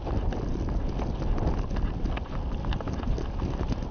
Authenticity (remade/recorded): recorded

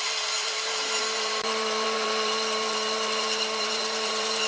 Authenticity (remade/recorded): remade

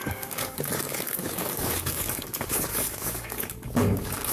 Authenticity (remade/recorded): remade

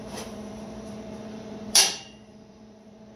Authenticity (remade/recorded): remade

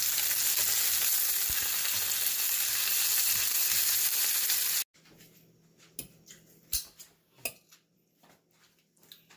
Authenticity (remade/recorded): recorded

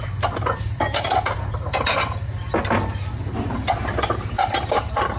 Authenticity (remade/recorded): recorded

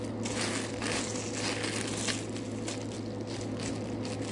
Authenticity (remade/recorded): recorded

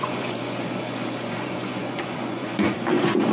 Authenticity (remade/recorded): remade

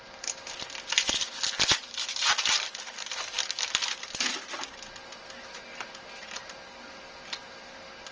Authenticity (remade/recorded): recorded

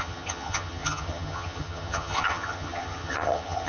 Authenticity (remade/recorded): remade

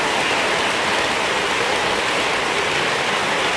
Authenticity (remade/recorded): recorded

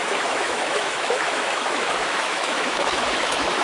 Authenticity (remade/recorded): remade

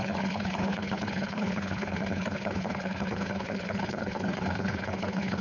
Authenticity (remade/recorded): remade